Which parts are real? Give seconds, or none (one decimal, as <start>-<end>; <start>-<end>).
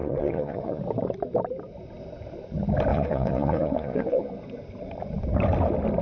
0.8-2.9; 4.3-6.0